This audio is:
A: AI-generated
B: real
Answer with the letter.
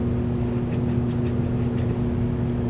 B